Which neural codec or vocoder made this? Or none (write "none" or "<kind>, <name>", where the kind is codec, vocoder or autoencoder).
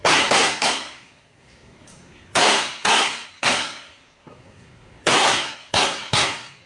codec, SNAC